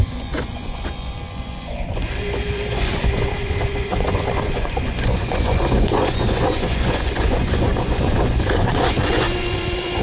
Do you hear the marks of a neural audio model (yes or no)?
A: yes